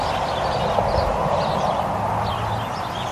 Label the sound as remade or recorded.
recorded